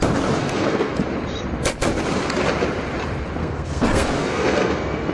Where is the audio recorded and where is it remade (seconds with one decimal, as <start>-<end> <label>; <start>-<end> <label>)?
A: 0.0-0.4 recorded; 0.4-0.9 remade; 0.9-3.4 recorded; 3.4-5.1 remade